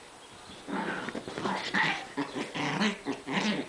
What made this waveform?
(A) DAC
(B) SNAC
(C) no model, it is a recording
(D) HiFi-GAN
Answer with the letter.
C